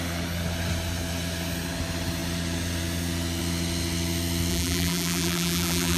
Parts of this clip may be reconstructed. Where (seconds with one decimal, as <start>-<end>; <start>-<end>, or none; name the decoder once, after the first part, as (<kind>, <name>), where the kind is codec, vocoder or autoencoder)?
4.5-6.0 (vocoder, BigVGAN v2)